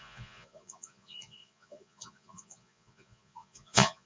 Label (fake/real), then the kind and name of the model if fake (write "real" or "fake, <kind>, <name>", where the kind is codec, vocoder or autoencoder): fake, vocoder, Vocos